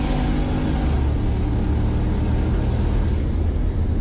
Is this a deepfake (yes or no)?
no